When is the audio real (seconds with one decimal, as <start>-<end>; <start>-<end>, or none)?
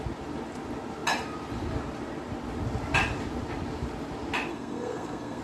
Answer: 0.0-4.5